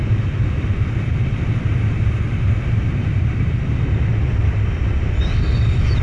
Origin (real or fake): real